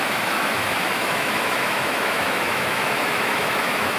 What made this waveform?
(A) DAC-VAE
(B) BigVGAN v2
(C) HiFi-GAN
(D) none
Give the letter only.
A